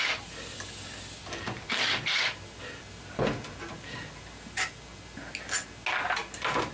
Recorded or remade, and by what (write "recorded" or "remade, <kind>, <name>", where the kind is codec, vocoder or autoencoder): recorded